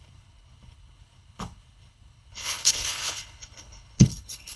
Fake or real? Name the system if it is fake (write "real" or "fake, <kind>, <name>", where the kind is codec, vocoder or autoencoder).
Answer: fake, codec, HILCodec